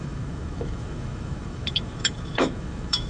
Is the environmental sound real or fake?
fake